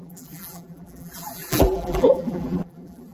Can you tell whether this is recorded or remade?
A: remade